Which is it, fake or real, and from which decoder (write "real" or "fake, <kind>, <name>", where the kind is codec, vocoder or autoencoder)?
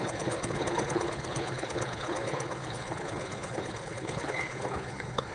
fake, codec, HILCodec